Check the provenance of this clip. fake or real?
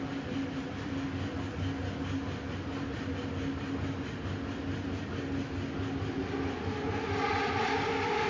real